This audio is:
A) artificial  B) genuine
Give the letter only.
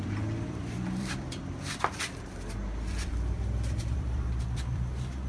A